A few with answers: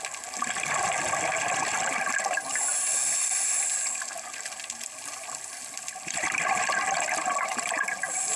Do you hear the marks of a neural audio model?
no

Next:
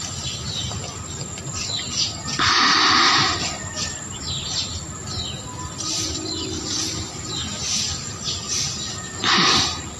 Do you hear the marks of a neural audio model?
no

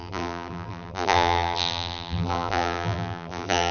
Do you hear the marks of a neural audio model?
yes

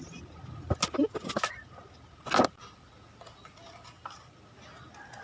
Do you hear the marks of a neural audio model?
no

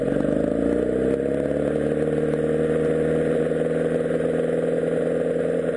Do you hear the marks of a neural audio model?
no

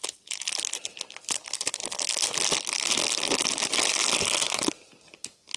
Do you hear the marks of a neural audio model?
no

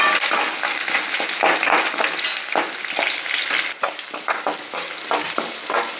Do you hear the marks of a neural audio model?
no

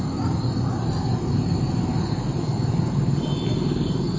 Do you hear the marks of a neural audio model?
yes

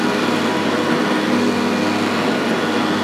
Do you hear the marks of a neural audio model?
no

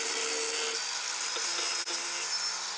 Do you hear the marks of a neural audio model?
no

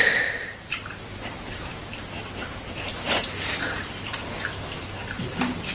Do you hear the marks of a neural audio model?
yes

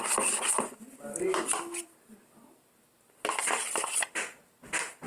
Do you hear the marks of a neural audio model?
no